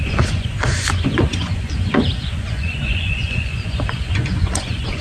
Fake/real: fake